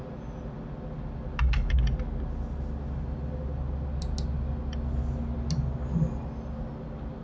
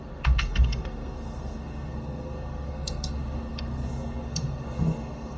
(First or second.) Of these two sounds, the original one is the first